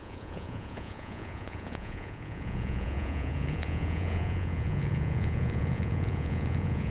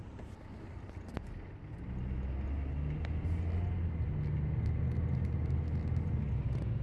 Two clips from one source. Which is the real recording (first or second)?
second